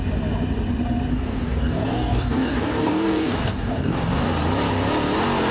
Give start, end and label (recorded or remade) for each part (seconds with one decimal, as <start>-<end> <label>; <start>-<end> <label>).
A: 0.0-1.1 recorded; 1.1-4.3 remade; 4.3-5.5 recorded